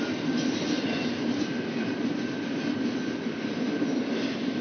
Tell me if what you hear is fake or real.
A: real